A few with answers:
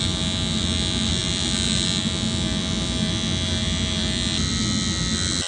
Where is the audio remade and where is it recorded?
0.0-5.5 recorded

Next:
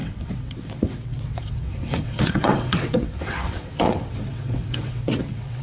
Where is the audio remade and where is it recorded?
0.0-5.6 remade

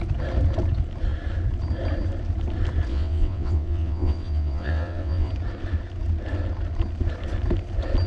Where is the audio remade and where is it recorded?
0.0-2.9 recorded; 2.9-5.3 remade; 5.3-8.1 recorded

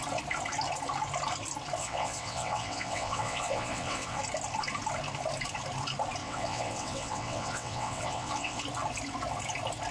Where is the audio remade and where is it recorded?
0.0-1.8 recorded; 1.8-4.2 remade; 4.2-6.2 recorded; 6.2-8.6 remade; 8.6-9.9 recorded

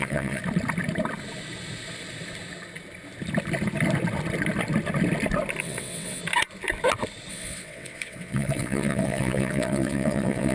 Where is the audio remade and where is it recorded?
0.0-0.4 remade; 0.4-5.6 recorded; 5.6-6.2 remade; 6.2-7.3 recorded; 7.3-10.5 remade

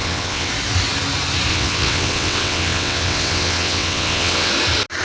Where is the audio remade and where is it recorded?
0.0-0.5 remade; 0.5-1.5 recorded; 1.5-4.5 remade; 4.5-5.0 recorded

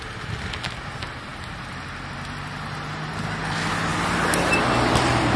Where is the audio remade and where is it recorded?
0.0-5.4 recorded